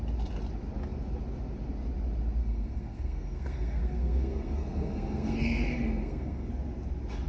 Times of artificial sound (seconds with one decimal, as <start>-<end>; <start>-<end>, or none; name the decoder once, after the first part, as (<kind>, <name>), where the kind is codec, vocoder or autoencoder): 2.4-6.5 (codec, SNAC)